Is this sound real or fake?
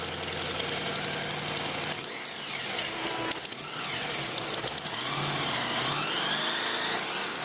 real